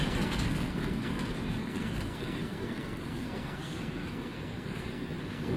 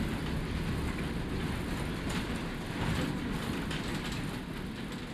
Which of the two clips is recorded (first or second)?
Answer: second